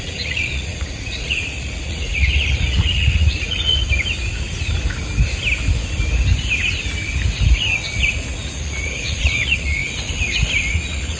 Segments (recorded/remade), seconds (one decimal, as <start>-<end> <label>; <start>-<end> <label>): 0.0-3.8 remade; 3.8-8.1 recorded; 8.1-9.8 remade; 9.8-10.7 recorded; 10.7-11.2 remade